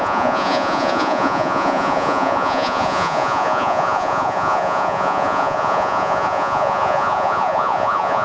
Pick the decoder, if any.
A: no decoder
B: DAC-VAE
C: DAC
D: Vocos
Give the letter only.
D